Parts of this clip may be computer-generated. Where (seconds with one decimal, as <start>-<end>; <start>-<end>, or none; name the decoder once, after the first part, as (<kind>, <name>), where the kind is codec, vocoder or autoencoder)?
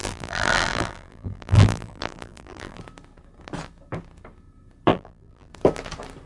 0.0-2.8 (vocoder, BigVGAN v2); 4.9-5.5